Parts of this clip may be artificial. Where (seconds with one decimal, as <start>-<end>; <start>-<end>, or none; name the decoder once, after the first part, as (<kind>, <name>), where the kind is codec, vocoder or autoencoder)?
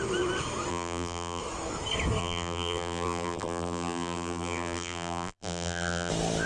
0.7-1.4 (vocoder, BigVGAN v2); 2.2-6.1